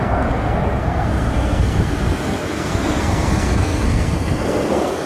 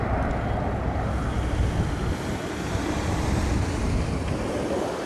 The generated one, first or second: first